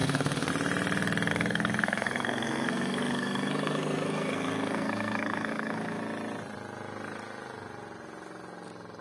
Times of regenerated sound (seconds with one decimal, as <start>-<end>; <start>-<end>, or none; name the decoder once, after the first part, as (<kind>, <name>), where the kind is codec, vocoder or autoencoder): 0.0-0.5 (codec, SNAC); 1.3-6.0